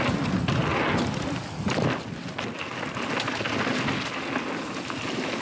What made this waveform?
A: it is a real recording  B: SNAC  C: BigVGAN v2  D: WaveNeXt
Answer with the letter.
A